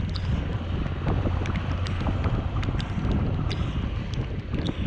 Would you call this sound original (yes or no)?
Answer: yes